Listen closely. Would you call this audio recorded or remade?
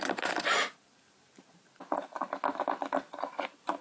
recorded